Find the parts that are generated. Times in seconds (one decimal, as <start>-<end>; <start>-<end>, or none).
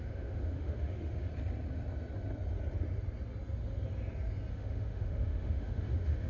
0.0-1.3; 4.5-6.3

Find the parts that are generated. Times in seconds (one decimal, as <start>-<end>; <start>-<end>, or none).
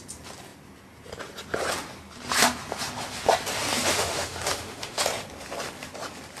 3.9-5.0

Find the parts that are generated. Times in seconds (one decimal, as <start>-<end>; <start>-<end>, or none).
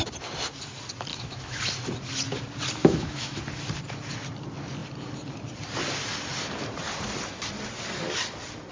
1.1-1.6; 2.8-3.4